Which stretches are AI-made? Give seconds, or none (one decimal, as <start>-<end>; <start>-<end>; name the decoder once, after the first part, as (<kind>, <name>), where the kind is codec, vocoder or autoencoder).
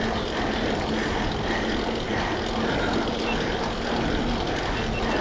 none